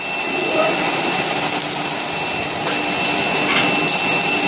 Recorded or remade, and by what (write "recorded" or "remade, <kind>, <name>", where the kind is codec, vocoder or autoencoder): recorded